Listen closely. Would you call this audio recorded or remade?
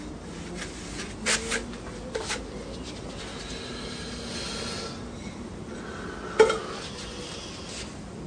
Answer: recorded